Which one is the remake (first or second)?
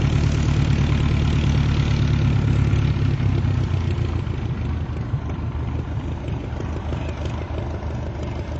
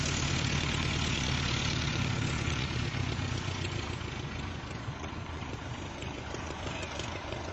second